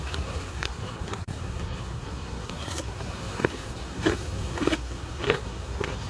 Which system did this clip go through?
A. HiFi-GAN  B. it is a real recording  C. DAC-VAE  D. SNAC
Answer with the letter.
D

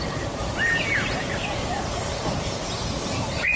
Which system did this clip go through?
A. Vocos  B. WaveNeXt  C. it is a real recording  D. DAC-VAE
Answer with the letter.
C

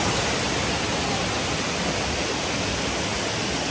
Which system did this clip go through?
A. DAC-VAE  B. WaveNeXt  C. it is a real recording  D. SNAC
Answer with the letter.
C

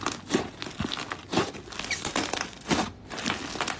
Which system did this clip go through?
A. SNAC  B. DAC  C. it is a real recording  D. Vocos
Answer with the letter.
C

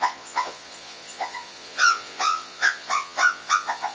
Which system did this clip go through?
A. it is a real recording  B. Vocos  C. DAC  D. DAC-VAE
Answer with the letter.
B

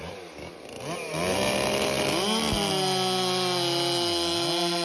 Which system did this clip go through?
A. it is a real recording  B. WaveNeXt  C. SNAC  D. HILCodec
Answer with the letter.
A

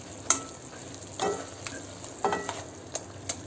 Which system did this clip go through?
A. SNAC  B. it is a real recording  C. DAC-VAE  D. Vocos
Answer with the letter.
B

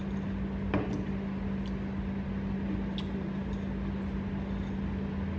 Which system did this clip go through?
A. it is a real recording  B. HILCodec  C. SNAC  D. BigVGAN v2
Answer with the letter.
A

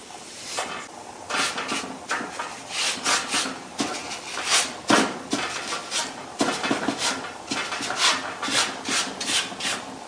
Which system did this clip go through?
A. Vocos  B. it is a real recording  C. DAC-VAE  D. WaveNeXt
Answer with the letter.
B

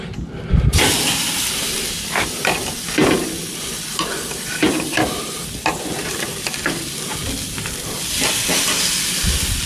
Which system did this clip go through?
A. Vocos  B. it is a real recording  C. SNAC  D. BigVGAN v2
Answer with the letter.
B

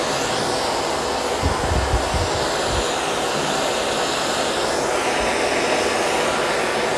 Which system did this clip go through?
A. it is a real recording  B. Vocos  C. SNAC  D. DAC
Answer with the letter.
A